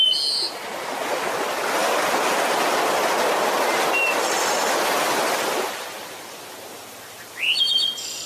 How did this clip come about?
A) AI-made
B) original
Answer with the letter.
B